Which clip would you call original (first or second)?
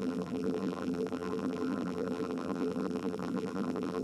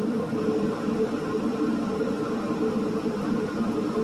second